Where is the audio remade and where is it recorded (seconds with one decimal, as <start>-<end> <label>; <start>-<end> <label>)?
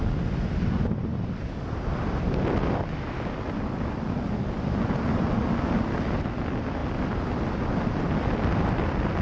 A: 0.0-9.2 recorded